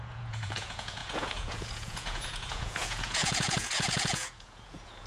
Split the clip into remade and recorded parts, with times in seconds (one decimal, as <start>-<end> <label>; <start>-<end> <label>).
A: 0.0-5.1 remade